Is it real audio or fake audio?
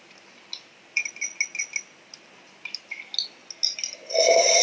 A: real